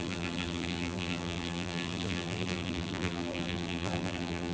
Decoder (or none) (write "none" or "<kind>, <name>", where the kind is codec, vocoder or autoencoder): vocoder, BigVGAN v2